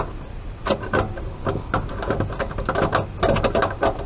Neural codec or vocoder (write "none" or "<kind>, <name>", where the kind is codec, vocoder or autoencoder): none